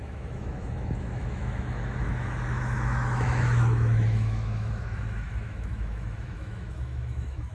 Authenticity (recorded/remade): remade